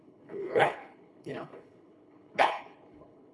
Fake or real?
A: fake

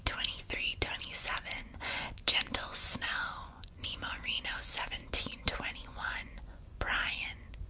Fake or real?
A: fake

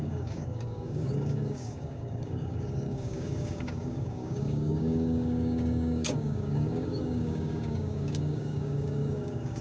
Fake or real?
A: fake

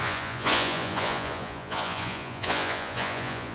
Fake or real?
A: fake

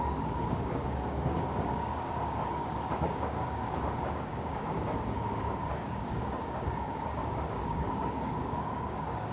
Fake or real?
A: fake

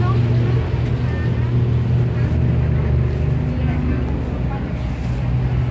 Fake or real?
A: real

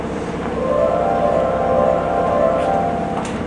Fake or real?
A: real